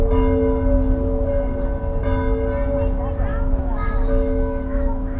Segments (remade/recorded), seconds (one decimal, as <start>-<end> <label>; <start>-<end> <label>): 0.0-3.3 recorded; 3.3-5.2 remade